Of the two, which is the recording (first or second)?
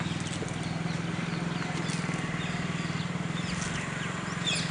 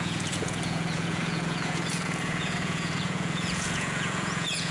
first